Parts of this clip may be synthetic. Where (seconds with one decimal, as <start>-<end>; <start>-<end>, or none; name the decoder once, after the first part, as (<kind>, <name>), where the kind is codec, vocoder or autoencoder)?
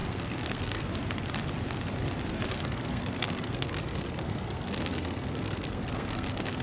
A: 0.0-0.9 (codec, SNAC); 2.5-6.6